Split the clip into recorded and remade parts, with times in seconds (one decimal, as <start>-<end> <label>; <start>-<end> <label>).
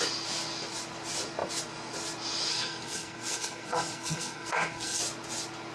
0.0-2.5 recorded; 2.5-5.0 remade; 5.0-5.7 recorded